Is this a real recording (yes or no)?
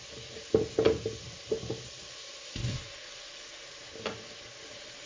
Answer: yes